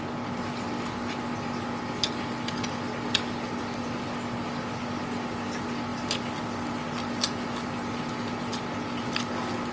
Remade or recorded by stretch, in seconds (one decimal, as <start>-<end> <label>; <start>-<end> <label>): 0.0-9.7 recorded